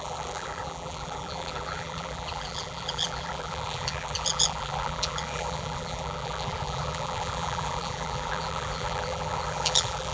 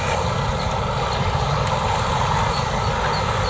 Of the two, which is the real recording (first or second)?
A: second